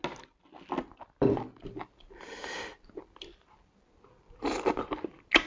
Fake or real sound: real